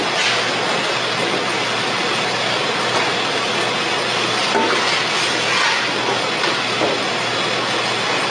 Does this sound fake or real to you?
real